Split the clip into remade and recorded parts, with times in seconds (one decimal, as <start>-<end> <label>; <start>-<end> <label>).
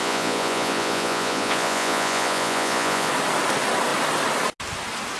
0.0-3.1 remade; 3.1-5.2 recorded